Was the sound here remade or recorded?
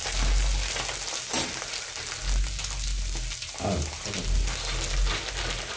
recorded